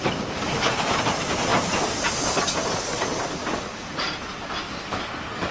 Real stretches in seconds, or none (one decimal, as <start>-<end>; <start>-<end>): 0.0-3.4; 4.3-5.5